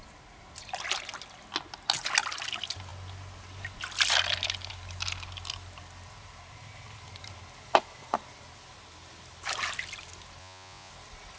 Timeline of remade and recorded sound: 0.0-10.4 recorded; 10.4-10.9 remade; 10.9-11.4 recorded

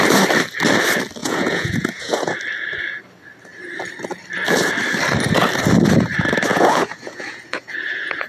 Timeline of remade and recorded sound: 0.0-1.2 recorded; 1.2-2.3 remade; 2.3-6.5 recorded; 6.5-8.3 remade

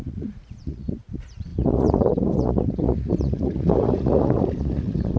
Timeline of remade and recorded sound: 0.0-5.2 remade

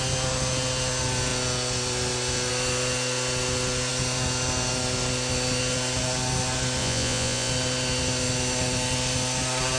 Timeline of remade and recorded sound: 0.0-6.8 recorded; 6.8-7.5 remade; 7.5-9.8 recorded